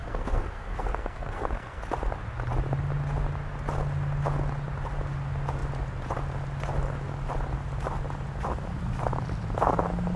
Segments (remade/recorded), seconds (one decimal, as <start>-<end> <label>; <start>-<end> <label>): 0.0-1.8 remade; 1.8-10.2 recorded